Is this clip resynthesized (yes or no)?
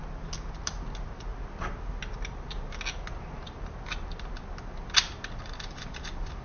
no